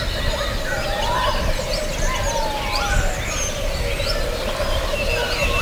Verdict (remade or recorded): recorded